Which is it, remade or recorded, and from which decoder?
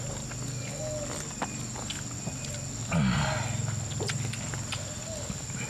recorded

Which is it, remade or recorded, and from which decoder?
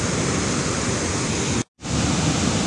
recorded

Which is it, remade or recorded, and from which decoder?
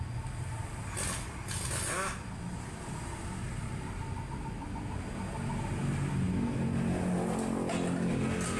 recorded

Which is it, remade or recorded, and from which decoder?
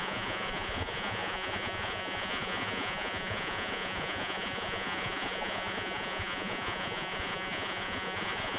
remade, vocoder, Vocos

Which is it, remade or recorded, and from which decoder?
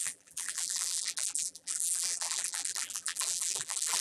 remade, vocoder, BigVGAN v2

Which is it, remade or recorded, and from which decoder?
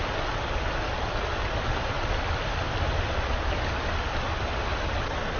recorded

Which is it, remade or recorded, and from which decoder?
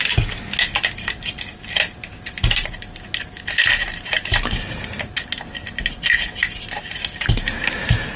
recorded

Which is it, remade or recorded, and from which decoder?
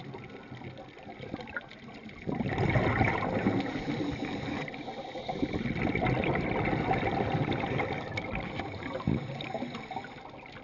recorded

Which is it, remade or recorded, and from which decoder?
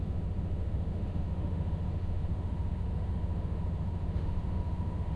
remade, autoencoder, DAC-VAE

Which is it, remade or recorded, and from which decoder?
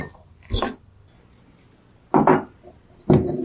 recorded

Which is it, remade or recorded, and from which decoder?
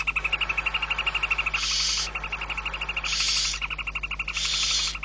recorded